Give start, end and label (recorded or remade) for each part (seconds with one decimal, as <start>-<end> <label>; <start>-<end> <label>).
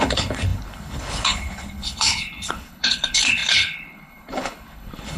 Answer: 0.0-5.2 remade